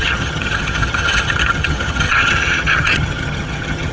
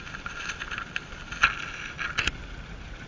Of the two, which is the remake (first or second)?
first